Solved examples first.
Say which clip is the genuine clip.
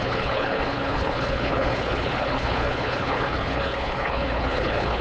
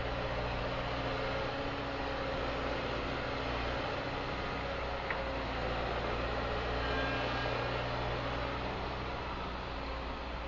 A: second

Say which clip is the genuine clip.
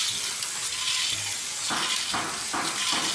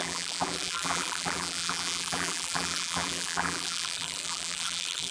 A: first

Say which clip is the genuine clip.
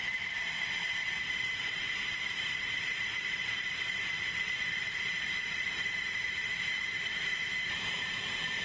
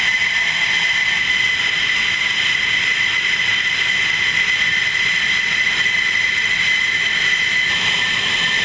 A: second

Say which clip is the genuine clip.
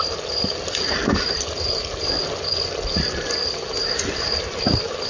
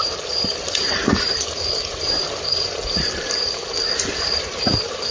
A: first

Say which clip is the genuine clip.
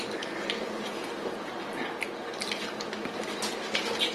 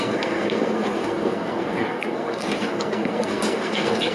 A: first